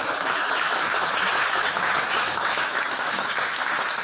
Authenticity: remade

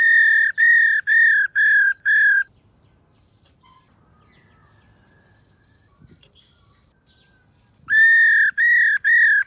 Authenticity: recorded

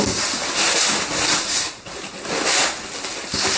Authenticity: recorded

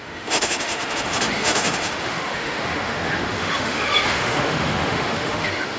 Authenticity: remade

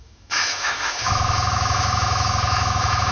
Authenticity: remade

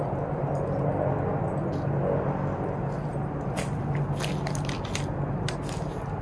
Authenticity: recorded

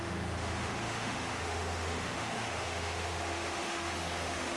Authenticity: remade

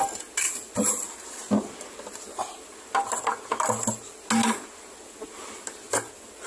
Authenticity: recorded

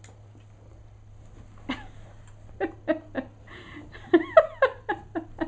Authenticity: recorded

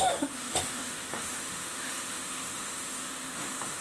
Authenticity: remade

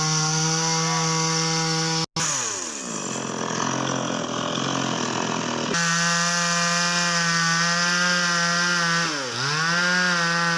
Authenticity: recorded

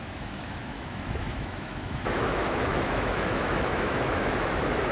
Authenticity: remade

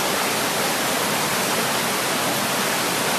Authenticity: recorded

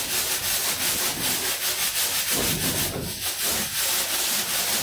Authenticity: recorded